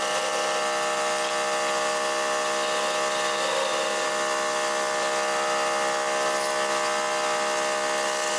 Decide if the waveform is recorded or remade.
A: recorded